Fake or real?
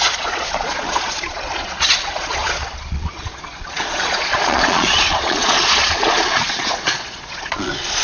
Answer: fake